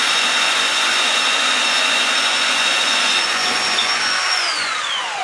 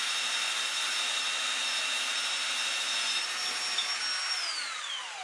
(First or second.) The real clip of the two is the second